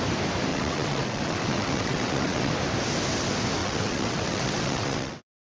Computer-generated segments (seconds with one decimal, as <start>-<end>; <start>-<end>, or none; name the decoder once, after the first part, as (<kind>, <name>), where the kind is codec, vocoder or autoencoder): 0.5-2.5 (vocoder, WaveNeXt); 3.6-5.4